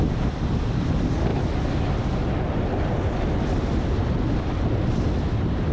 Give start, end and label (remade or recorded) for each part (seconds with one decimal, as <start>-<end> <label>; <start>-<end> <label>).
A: 0.0-5.7 recorded